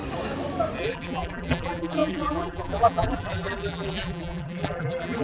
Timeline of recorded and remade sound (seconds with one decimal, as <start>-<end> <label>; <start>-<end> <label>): 0.0-0.8 recorded; 0.8-5.2 remade